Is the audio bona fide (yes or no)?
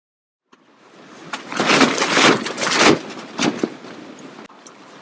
yes